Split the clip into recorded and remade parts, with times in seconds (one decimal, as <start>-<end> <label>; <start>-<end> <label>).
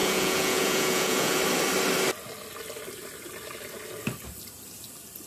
0.0-1.4 remade; 1.4-5.3 recorded